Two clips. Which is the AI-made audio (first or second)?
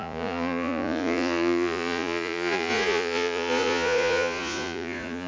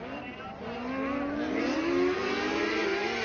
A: first